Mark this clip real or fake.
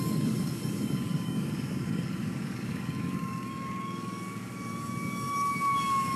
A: fake